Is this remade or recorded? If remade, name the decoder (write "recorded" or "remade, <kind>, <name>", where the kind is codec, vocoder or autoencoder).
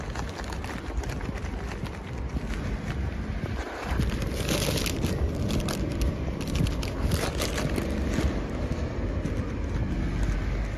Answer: recorded